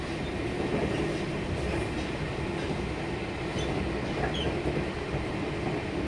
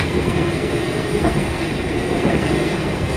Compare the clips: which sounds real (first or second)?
first